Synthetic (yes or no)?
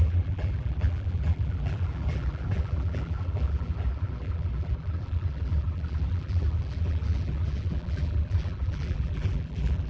yes